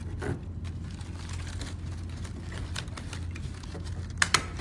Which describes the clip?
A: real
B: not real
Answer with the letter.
A